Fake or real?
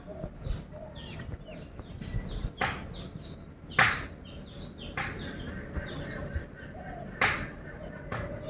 real